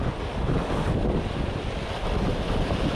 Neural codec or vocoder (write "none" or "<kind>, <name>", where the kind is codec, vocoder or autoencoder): none